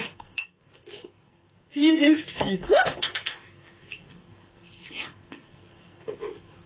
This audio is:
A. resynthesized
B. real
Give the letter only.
A